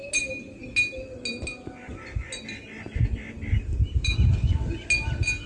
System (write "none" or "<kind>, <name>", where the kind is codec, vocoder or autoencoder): none